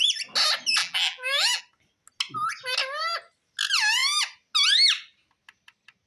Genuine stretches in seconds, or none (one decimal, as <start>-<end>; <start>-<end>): 0.0-0.8; 1.6-6.1